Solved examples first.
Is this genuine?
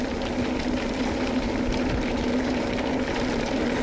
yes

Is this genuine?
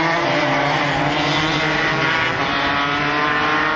yes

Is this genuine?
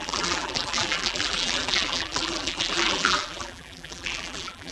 no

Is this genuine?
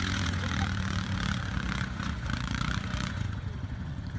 no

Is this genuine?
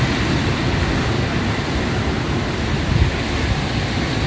yes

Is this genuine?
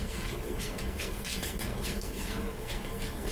no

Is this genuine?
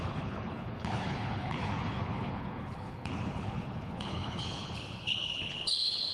no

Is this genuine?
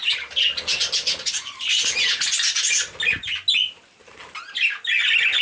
yes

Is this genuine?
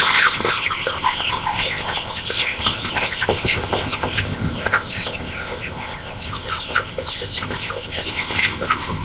no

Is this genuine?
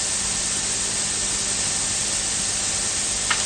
yes